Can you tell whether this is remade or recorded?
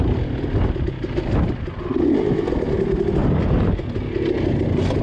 recorded